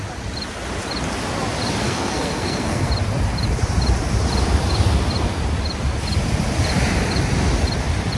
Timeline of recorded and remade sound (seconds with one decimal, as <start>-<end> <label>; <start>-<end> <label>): 0.0-1.8 recorded; 1.8-2.9 remade; 2.9-8.2 recorded